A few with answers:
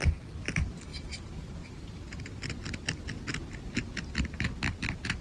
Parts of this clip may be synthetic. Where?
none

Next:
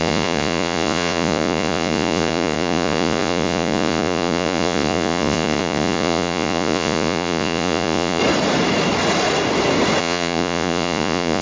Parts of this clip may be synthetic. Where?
0.0-8.2; 10.0-11.4

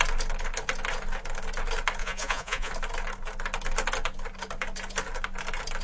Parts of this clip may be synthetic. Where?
2.0-2.7

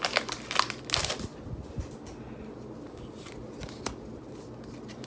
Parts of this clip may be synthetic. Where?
none

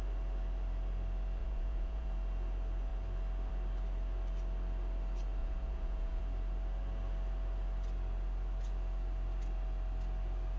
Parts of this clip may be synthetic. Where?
1.4-2.1; 5.4-6.2